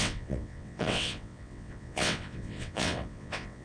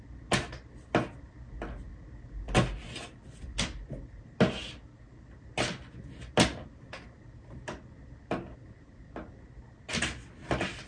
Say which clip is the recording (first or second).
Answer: second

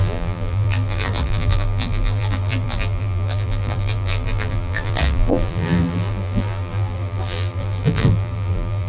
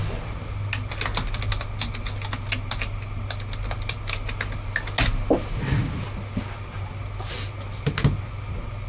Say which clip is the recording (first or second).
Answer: second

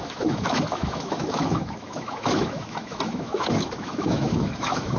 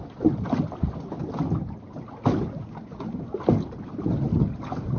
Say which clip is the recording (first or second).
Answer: second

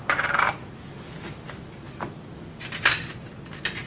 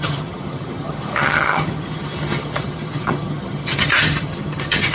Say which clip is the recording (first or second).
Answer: first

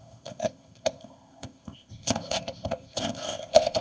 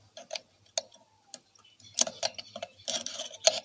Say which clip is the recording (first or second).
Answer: second